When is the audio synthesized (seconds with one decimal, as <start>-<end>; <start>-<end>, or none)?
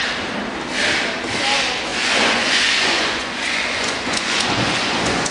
1.9-5.3